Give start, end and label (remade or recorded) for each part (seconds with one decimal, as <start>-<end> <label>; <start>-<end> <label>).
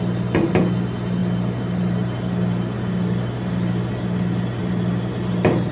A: 0.0-5.7 recorded